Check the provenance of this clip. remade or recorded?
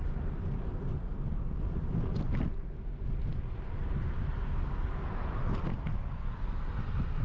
recorded